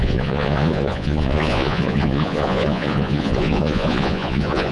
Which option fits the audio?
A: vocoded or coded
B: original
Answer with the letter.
A